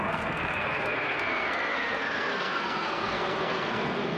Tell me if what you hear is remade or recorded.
remade